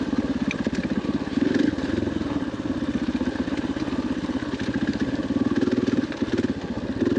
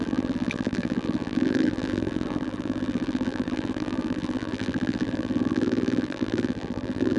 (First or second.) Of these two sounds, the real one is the first